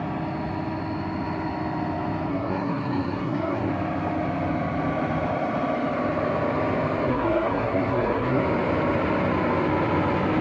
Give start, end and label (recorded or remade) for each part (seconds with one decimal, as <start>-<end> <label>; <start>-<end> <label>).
0.0-2.3 recorded; 2.3-3.7 remade; 3.7-7.1 recorded; 7.1-8.4 remade; 8.4-10.4 recorded